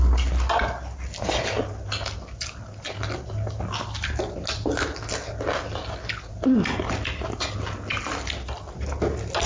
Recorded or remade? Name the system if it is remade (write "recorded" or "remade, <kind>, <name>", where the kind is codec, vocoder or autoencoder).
recorded